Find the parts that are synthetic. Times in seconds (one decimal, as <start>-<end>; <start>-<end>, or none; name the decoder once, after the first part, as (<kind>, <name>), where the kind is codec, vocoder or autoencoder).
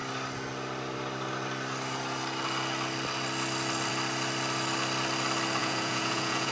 5.6-6.5 (vocoder, Vocos)